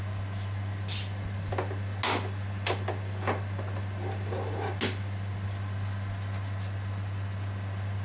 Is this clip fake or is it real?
real